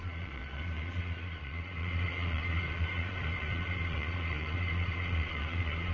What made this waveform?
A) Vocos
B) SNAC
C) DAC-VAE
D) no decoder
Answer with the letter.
A